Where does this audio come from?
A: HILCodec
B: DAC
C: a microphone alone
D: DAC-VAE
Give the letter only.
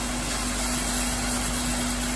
C